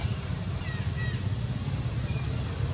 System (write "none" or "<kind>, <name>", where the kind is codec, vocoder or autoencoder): none